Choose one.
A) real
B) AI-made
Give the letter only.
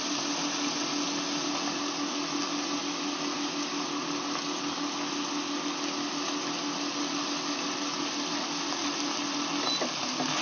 A